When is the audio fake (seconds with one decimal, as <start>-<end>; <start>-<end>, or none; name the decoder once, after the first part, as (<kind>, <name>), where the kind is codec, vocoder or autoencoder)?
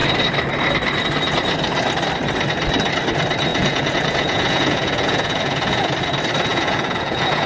3.5-5.9 (vocoder, Vocos); 6.5-7.5